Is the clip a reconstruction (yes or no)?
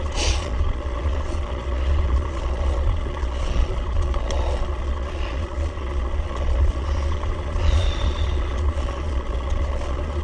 yes